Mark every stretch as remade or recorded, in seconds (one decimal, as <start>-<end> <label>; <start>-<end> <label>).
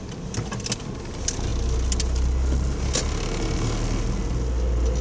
0.0-5.0 recorded